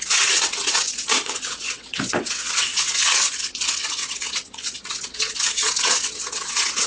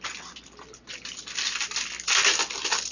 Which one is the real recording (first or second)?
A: second